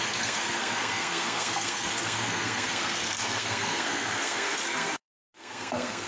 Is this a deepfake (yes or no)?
yes